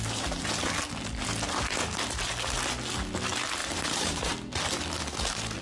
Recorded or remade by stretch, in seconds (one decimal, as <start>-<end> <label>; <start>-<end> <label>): 0.0-3.6 recorded; 3.6-4.3 remade; 4.3-5.6 recorded